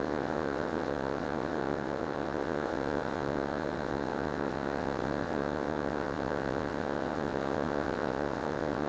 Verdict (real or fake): fake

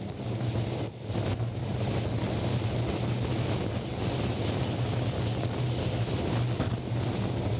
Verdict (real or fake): real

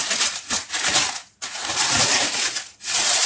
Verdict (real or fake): fake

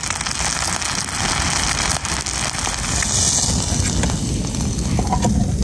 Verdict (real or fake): real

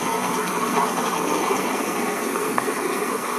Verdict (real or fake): fake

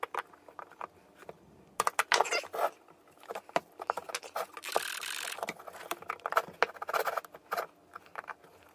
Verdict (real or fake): real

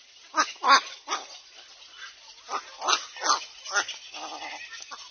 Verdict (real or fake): real